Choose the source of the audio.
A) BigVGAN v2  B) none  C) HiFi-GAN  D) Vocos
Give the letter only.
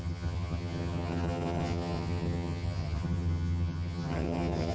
C